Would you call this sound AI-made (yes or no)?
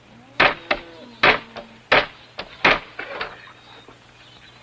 no